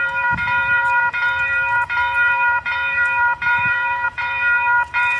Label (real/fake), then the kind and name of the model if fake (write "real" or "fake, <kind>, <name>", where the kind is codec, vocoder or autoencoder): fake, vocoder, BigVGAN v2